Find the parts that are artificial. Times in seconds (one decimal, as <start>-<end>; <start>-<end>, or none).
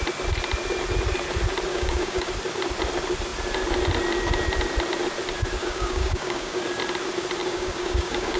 1.7-2.3; 5.6-6.6; 7.4-8.4